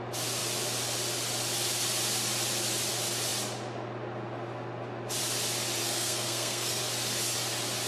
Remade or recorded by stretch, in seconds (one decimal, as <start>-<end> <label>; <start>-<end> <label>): 0.0-5.8 recorded; 5.8-6.8 remade; 6.8-7.9 recorded